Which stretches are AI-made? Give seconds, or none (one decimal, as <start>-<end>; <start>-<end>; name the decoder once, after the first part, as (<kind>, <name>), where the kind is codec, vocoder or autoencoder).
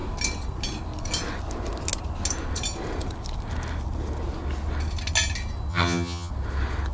5.7-6.3 (vocoder, HiFi-GAN)